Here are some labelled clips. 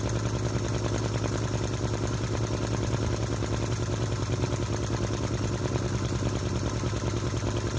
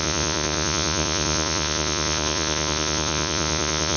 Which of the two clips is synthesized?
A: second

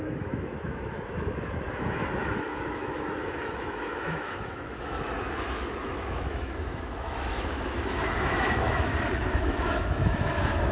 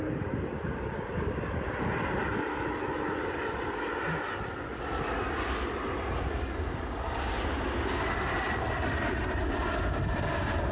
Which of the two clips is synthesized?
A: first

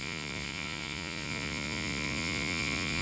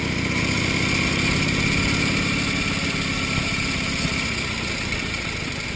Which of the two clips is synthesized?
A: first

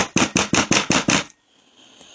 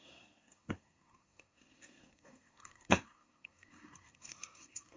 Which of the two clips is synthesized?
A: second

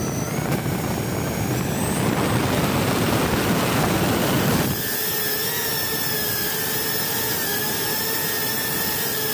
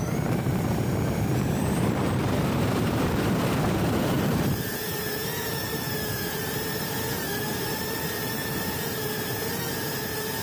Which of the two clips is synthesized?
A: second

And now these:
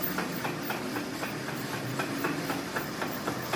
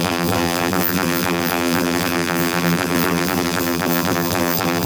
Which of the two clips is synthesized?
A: second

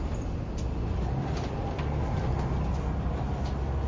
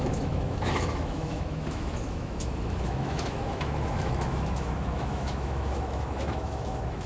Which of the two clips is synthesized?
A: second